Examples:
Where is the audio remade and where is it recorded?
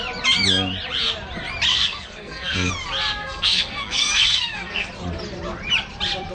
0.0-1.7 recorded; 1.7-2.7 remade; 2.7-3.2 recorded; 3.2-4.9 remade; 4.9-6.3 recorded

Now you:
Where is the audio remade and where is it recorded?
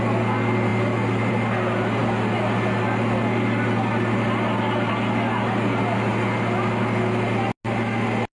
0.0-8.3 recorded